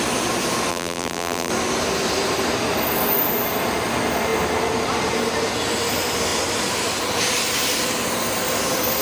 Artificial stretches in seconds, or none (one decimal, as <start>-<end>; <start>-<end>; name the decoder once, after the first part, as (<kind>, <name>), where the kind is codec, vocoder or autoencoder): 0.7-1.5 (vocoder, BigVGAN v2)